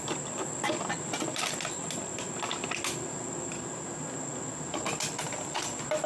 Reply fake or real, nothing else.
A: real